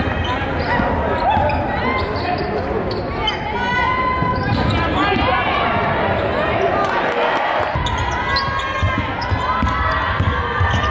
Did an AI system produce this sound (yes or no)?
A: no